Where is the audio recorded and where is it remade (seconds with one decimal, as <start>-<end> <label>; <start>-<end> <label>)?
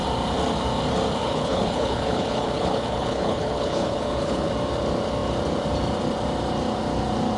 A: 0.0-1.2 recorded; 1.2-4.5 remade; 4.5-7.4 recorded